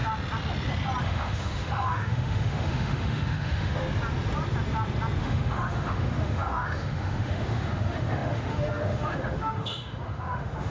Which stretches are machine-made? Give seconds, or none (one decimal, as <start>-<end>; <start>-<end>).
1.0-3.8; 5.2-10.7